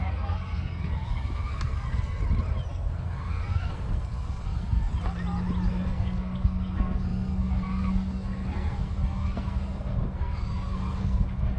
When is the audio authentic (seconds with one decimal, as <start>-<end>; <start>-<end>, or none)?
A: 2.2-2.7; 4.9-5.7